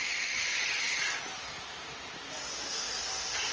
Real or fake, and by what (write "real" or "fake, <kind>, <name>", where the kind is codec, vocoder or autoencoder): real